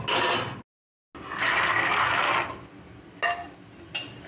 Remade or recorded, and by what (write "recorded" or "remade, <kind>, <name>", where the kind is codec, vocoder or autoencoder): recorded